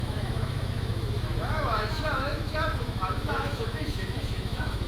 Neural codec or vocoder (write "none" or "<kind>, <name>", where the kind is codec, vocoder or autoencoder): autoencoder, DAC-VAE